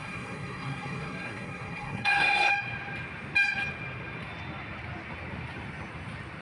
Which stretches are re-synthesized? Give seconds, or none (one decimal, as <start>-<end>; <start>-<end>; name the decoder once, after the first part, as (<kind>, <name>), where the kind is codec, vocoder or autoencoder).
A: 0.0-2.5 (codec, SNAC)

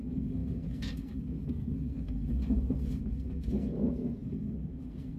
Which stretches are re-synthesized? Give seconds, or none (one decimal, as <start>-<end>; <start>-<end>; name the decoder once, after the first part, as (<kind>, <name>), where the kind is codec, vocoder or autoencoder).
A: 0.0-5.2 (codec, SNAC)